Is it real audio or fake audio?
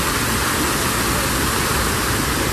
real